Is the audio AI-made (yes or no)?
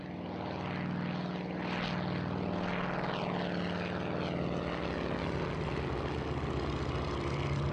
no